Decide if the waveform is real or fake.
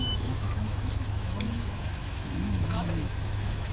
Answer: fake